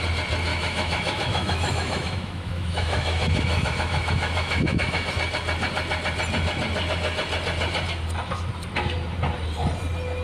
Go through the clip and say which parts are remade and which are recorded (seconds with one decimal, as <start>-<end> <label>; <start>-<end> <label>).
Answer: 0.0-0.5 recorded; 0.5-5.1 remade; 5.1-10.2 recorded